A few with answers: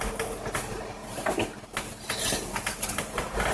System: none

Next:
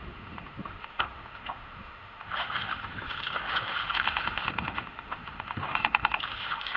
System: autoencoder, DAC-VAE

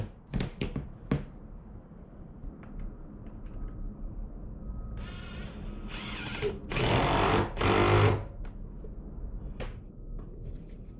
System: none